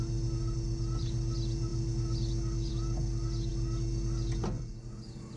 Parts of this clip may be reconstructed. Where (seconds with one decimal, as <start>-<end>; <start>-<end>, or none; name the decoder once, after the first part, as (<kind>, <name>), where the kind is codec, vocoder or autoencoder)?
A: none